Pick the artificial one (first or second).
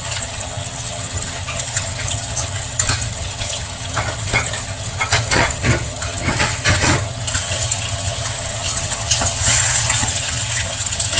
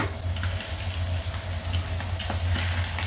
first